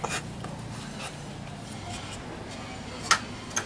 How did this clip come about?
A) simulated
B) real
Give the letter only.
B